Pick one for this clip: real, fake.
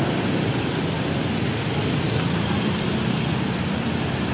real